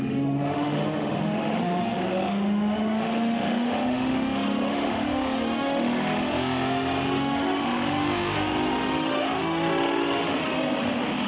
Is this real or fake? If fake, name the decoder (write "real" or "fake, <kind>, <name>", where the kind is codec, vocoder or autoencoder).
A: fake, autoencoder, DAC-VAE